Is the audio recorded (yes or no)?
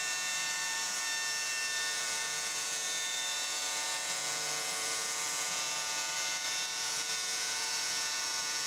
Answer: no